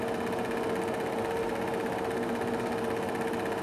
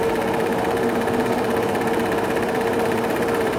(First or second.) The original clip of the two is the first